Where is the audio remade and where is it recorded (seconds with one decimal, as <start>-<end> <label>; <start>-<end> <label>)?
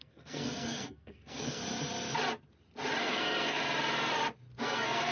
0.0-1.6 remade; 1.6-3.0 recorded; 3.0-3.6 remade; 3.6-4.6 recorded; 4.6-5.1 remade